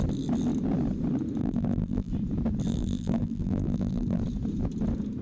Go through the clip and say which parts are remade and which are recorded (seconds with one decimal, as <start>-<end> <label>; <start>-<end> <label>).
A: 0.0-1.4 recorded; 1.4-2.1 remade; 2.1-2.7 recorded; 2.7-4.2 remade; 4.2-5.2 recorded